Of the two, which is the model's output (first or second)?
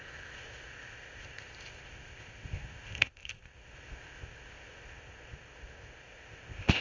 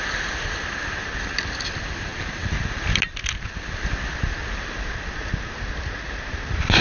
first